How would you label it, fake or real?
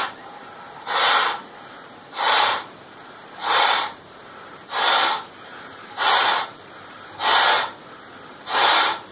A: fake